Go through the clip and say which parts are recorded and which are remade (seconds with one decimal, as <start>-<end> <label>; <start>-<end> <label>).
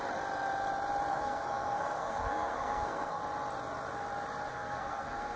0.0-1.1 recorded; 1.1-3.2 remade; 3.2-4.5 recorded; 4.5-5.4 remade